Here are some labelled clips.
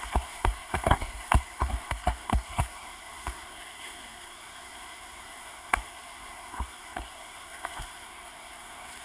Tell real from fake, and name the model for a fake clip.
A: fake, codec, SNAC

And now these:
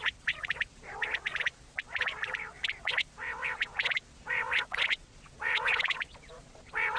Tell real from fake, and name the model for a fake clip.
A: fake, vocoder, Vocos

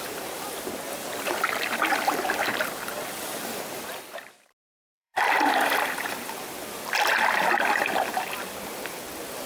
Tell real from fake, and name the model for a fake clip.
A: fake, vocoder, BigVGAN v2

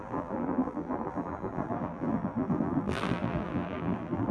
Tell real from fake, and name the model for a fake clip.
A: fake, vocoder, BigVGAN v2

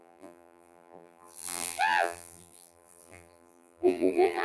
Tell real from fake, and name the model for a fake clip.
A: fake, vocoder, BigVGAN v2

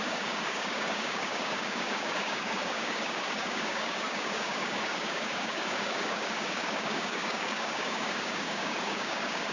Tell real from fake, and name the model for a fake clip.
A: fake, codec, DAC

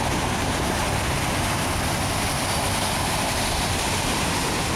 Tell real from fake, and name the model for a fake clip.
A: real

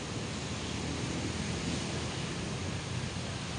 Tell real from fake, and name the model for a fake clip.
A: real